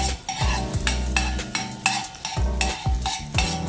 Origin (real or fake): real